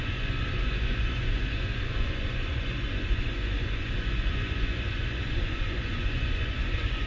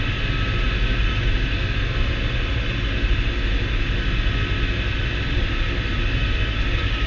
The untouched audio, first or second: second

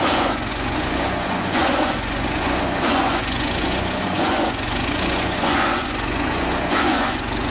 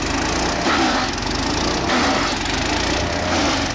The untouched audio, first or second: second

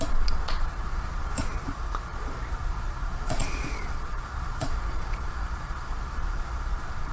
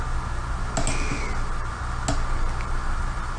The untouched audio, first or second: second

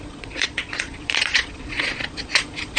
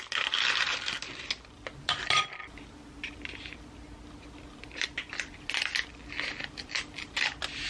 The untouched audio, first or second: second